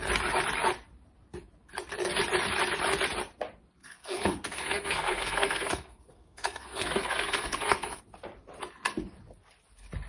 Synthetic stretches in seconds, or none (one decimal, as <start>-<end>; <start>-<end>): 3.8-8.0